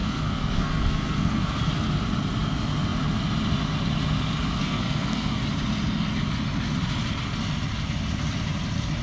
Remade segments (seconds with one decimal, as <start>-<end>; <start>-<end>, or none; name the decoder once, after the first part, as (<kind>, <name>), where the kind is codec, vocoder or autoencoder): 0.0-1.7 (codec, SNAC); 4.6-5.4